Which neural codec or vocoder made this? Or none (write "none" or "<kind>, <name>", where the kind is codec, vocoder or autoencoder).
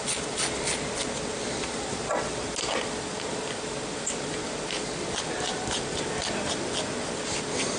none